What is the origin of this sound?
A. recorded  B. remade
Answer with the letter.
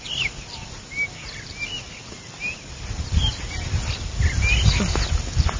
A